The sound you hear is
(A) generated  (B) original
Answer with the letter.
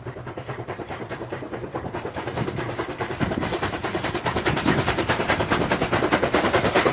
A